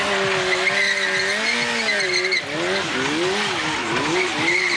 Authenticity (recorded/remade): recorded